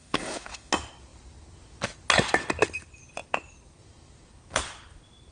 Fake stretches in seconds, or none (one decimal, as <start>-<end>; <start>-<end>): 0.0-0.7